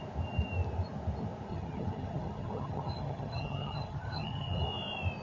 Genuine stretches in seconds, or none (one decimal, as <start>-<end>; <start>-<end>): 0.0-1.5; 4.6-5.2